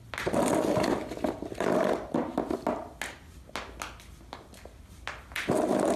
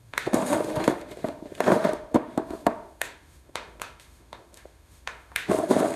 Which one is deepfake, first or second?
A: second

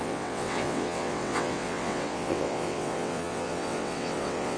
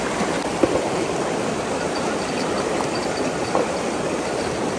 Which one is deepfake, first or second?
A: first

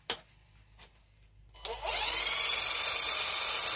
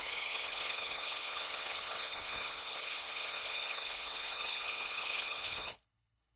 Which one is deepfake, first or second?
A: second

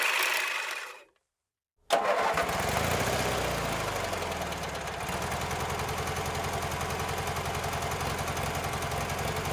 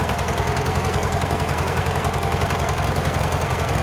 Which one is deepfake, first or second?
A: second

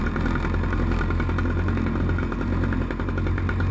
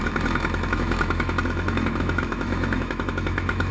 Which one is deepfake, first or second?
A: second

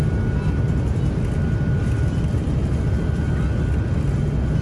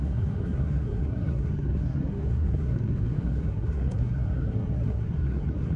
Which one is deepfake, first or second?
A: second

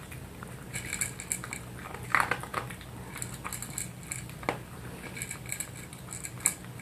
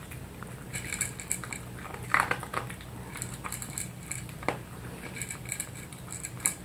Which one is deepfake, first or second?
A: second